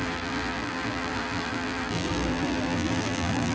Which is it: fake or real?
fake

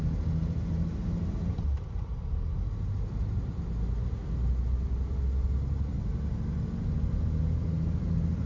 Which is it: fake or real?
real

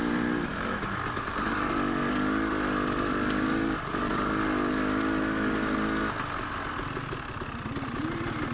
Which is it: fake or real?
real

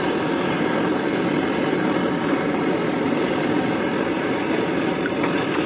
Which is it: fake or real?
fake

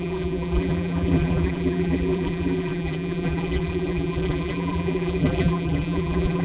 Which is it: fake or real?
fake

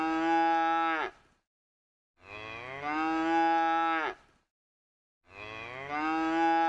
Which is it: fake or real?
real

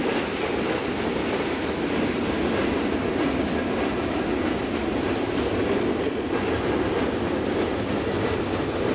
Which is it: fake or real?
real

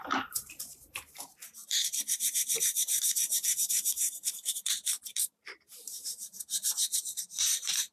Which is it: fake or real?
fake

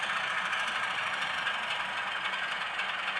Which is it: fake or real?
real